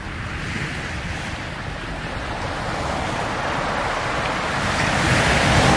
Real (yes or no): yes